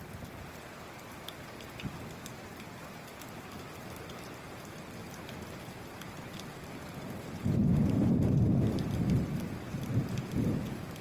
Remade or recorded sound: recorded